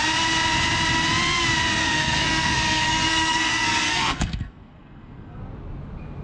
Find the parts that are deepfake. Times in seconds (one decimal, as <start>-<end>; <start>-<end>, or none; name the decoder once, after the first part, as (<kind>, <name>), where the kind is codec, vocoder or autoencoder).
1.8-5.4 (codec, SNAC)